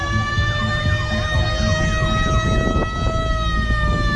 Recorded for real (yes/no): yes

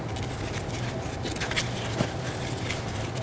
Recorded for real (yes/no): yes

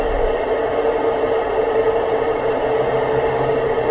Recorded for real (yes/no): yes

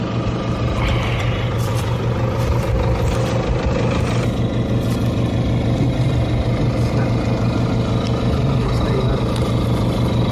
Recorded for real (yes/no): yes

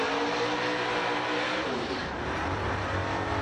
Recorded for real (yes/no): yes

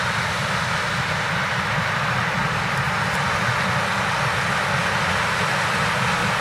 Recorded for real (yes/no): yes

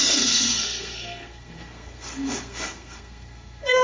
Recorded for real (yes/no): no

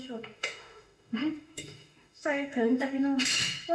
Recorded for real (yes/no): no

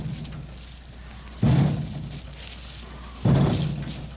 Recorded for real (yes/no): yes